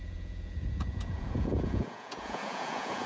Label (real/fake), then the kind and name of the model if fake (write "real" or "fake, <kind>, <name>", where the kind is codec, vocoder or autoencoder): fake, vocoder, Vocos